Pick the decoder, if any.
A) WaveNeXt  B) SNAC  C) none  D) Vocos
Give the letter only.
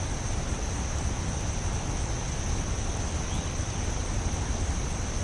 C